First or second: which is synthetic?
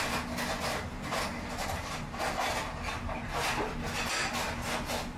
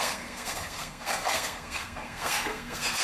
second